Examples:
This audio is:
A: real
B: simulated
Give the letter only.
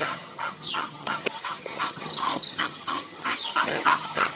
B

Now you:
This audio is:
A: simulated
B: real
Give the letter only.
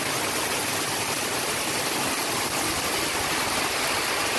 B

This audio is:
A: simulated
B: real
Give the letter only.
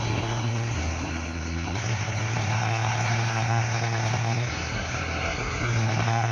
A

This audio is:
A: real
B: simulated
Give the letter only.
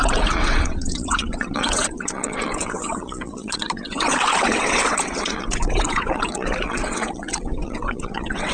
B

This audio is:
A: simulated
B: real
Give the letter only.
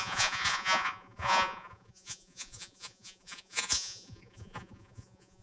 A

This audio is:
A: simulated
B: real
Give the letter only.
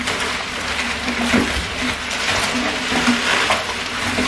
B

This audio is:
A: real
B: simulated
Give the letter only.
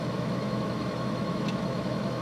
B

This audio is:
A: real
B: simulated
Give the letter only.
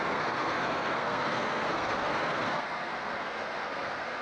B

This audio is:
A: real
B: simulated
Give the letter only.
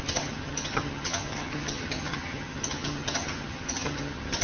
B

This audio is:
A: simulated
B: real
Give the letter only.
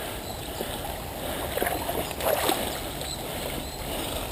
B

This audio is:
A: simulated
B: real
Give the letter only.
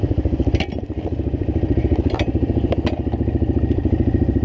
B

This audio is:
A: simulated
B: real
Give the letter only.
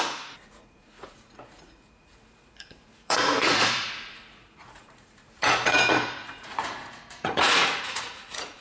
A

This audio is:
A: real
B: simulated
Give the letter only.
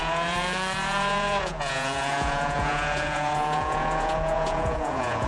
B